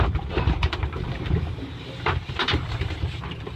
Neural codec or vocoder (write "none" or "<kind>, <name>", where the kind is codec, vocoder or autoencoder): vocoder, BigVGAN v2